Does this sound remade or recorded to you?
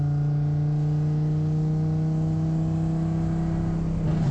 recorded